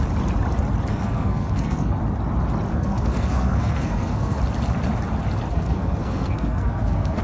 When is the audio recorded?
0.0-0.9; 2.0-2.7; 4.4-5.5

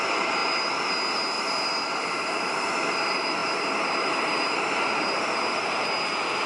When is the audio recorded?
0.4-1.4; 3.4-6.5